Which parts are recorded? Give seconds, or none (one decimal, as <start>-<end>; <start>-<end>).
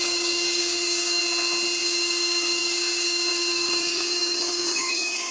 1.2-1.8